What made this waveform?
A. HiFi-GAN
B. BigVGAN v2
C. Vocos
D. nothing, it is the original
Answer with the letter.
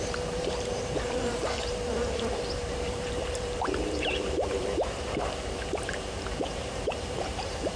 B